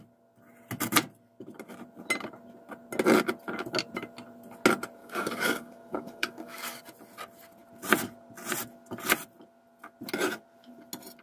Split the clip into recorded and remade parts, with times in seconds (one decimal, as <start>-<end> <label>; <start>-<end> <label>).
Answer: 0.0-5.0 recorded; 5.0-6.8 remade; 6.8-11.2 recorded